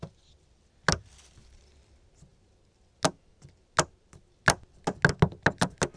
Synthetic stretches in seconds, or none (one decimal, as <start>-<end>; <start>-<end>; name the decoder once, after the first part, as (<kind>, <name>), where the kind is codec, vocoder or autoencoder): none